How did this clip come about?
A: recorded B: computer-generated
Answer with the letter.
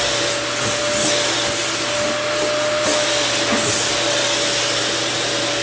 A